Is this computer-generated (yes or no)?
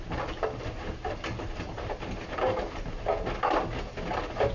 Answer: no